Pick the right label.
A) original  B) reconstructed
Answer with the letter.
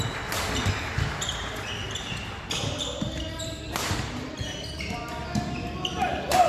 A